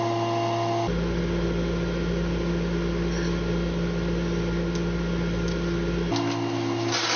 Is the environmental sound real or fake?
real